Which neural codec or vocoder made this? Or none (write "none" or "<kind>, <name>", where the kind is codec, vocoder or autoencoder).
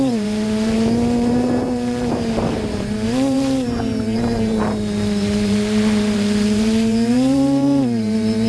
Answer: vocoder, BigVGAN v2